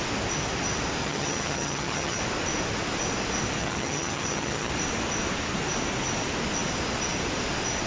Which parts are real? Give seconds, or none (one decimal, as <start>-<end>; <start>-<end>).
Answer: 0.0-1.0; 2.2-3.6; 4.7-7.9